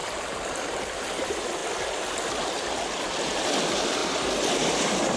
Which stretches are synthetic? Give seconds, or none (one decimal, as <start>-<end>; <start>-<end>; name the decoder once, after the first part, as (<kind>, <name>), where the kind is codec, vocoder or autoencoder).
1.0-1.6 (vocoder, BigVGAN v2); 3.4-4.0; 4.5-5.2